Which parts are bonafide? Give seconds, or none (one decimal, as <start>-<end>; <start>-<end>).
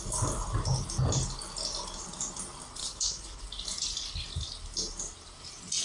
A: 0.0-2.8; 3.4-5.8